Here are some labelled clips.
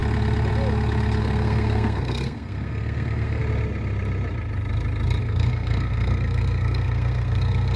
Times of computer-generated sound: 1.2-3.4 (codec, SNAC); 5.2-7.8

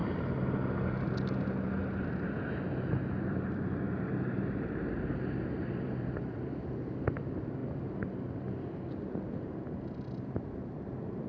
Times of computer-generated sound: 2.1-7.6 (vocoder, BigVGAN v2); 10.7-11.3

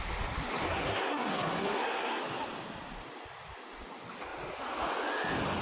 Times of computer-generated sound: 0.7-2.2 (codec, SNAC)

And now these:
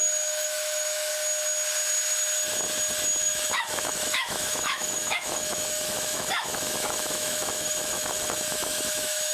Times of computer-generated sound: 0.0-1.1 (autoencoder, DAC-VAE); 3.2-9.3